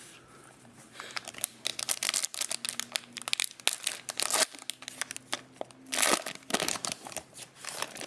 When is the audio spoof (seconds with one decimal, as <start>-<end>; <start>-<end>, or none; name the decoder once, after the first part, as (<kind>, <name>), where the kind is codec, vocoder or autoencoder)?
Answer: 0.0-1.7 (vocoder, BigVGAN v2); 6.5-8.1